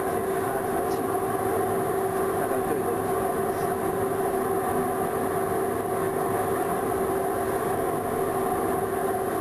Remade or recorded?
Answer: recorded